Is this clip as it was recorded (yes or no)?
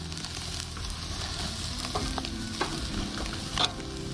yes